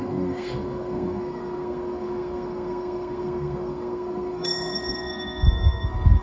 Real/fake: fake